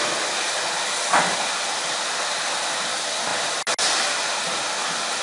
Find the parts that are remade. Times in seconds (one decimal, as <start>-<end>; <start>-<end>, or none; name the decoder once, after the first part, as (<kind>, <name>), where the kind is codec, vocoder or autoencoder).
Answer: none